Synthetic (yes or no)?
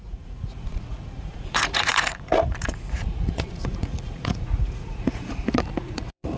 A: yes